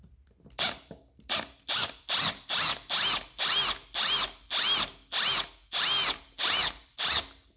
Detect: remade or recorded recorded